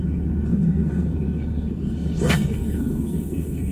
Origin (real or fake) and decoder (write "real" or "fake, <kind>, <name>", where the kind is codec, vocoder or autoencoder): fake, codec, SNAC